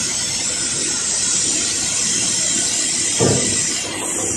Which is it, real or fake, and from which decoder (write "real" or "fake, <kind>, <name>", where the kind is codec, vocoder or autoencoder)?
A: real